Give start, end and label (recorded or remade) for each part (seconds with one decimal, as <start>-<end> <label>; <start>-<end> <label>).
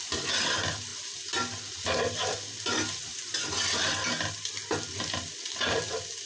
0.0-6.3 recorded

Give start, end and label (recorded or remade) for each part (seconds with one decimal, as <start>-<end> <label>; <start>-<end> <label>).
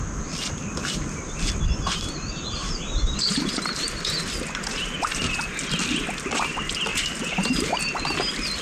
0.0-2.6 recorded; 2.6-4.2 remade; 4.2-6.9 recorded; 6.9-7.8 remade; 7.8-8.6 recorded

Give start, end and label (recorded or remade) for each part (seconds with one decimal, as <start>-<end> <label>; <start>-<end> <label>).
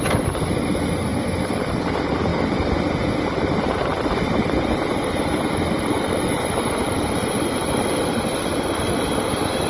0.0-3.9 recorded; 3.9-9.0 remade; 9.0-9.7 recorded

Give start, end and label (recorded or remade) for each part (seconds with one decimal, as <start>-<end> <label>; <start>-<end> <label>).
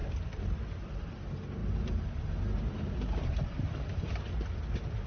0.0-1.6 recorded; 1.6-4.2 remade; 4.2-5.1 recorded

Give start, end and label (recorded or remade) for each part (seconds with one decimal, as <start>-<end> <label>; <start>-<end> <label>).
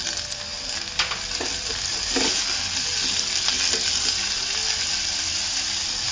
0.0-0.5 recorded; 0.5-2.7 remade; 2.7-6.1 recorded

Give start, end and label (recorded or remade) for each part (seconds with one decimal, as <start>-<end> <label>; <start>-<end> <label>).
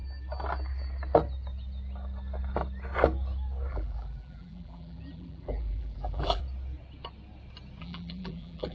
0.0-3.7 recorded; 3.7-6.4 remade; 6.4-7.8 recorded; 7.8-8.7 remade